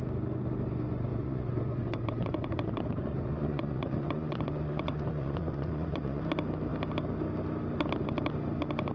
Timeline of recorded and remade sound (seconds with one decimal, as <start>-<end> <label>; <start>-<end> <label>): 0.0-1.1 recorded; 1.1-6.2 remade; 6.2-8.9 recorded